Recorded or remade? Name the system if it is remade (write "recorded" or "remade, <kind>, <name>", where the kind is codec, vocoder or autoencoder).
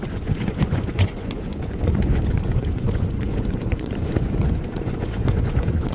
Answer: remade, vocoder, Vocos